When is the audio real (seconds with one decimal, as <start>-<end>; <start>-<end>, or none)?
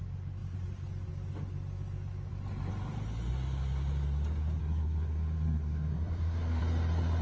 0.0-4.6; 6.6-7.2